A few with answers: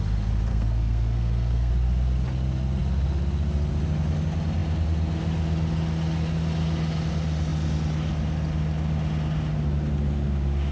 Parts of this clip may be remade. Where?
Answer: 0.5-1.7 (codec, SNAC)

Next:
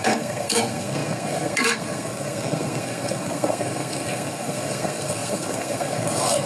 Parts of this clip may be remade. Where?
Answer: 0.0-6.5 (codec, SNAC)

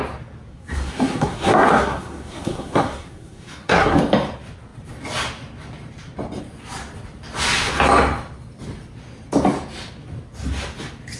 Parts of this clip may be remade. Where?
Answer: 0.5-4.0 (codec, SNAC)

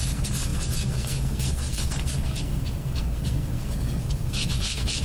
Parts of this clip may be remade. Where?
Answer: 0.0-5.0 (codec, SNAC)

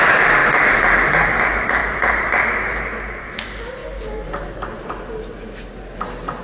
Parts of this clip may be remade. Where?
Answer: none

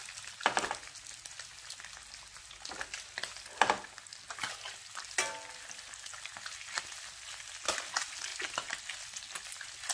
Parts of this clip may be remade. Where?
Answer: none

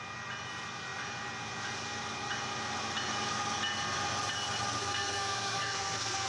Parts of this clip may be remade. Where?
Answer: 4.8-6.3 (codec, SNAC)

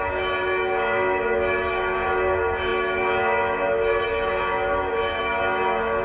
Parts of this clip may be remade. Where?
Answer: none